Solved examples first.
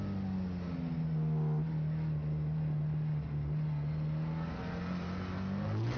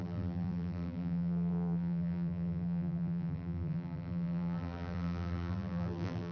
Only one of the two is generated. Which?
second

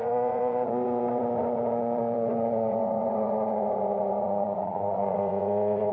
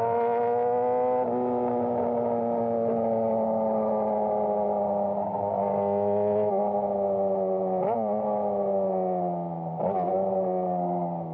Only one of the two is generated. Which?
first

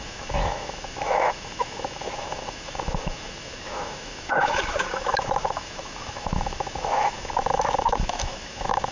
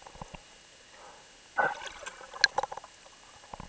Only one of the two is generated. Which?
first